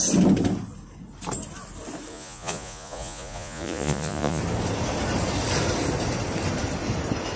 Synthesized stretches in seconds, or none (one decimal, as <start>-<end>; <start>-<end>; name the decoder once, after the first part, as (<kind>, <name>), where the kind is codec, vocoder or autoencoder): 2.1-4.4 (vocoder, Vocos)